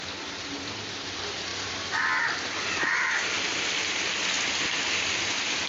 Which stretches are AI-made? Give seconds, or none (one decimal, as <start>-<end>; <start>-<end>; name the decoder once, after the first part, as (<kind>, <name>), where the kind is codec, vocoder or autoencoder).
none

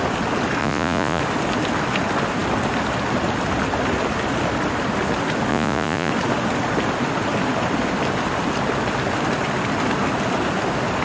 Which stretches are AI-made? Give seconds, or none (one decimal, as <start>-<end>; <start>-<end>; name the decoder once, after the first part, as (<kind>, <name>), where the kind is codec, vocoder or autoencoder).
0.6-1.2 (vocoder, Vocos); 5.5-6.1

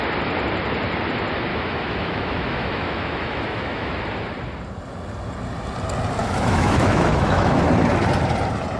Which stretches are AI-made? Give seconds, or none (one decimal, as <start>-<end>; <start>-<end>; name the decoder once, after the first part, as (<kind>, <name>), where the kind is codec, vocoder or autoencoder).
1.5-3.9 (autoencoder, DAC-VAE); 6.2-7.7

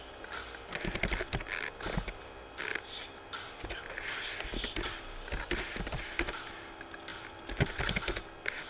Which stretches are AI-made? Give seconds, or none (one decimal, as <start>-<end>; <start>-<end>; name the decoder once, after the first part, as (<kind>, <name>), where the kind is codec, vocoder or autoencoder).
none

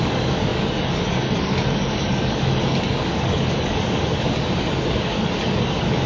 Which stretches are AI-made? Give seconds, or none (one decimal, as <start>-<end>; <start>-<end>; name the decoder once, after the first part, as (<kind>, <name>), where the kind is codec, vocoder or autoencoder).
0.0-6.1 (codec, DAC)